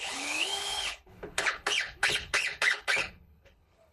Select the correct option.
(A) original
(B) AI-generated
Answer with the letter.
B